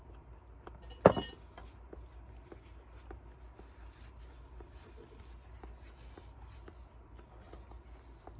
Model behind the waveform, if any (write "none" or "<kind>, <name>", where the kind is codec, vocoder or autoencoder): none